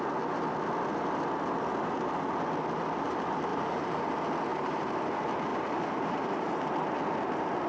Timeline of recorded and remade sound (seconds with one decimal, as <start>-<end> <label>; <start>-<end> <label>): 0.0-3.5 recorded; 3.5-4.1 remade; 4.1-4.5 recorded; 4.5-5.1 remade; 5.1-5.5 recorded; 5.5-6.7 remade; 6.7-7.7 recorded